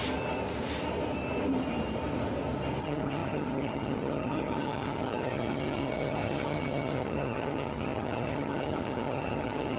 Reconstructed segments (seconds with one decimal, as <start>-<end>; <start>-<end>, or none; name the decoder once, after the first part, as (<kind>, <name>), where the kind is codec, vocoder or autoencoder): 2.8-9.8 (vocoder, HiFi-GAN)